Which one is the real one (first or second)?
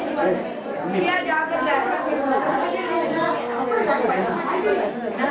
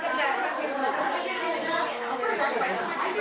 first